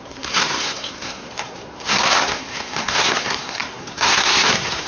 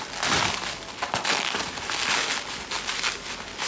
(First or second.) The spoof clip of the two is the first